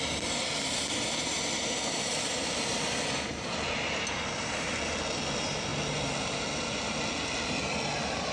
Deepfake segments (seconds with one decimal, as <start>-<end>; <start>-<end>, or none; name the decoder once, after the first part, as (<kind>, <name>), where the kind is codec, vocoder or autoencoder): none